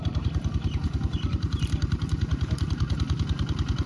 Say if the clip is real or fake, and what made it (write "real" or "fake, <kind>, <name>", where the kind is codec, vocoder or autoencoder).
fake, vocoder, BigVGAN v2